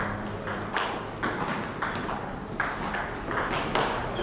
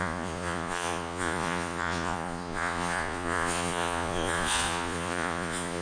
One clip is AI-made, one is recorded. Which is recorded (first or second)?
first